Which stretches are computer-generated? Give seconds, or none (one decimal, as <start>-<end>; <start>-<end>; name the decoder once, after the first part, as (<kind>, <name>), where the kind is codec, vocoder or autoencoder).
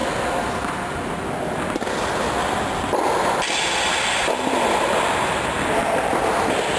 none